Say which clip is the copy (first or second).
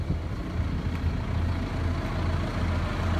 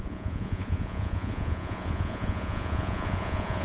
second